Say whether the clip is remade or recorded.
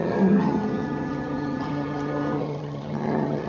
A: remade